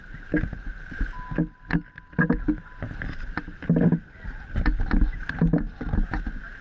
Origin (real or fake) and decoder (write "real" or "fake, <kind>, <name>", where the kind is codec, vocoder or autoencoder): real